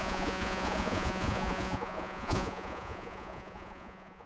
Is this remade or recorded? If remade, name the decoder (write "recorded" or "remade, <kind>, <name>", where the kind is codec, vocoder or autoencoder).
remade, vocoder, Vocos